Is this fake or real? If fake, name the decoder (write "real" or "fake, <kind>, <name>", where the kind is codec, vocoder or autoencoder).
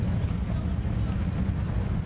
real